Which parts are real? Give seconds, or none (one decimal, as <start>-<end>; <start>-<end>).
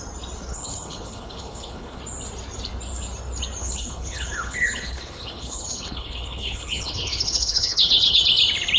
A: 0.0-0.5; 2.0-3.6; 8.2-8.8